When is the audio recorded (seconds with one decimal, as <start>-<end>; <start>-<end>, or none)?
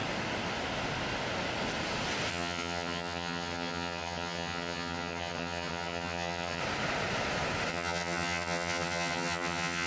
0.0-2.3; 6.6-7.7